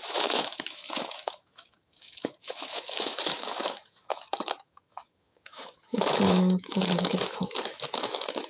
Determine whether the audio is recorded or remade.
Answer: remade